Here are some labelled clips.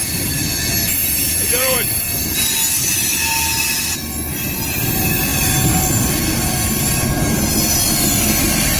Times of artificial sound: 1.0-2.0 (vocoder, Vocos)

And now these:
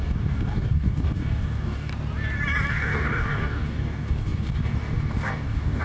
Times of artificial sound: 0.0-1.9 (codec, DAC); 2.7-5.8

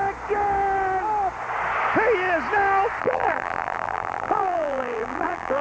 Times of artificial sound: 3.0-5.6 (vocoder, BigVGAN v2)

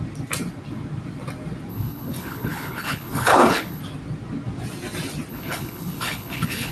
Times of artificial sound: 1.7-3.8 (codec, HILCodec); 5.3-6.7

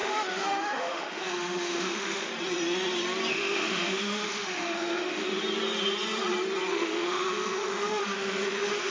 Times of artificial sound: 0.0-2.3 (autoencoder, DAC-VAE); 3.3-5.4; 6.7-8.9

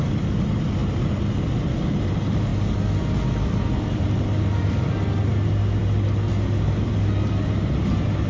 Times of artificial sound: none

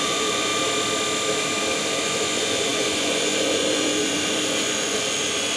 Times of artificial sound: 0.0-0.5 (vocoder, Vocos); 1.9-5.6

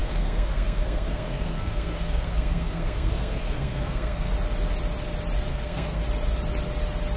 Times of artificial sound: 0.0-4.3 (codec, SNAC); 5.5-6.0